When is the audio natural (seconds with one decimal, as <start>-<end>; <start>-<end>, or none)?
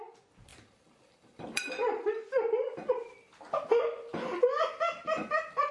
0.0-0.5; 2.3-5.7